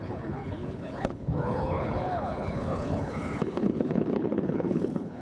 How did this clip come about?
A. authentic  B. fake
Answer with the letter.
B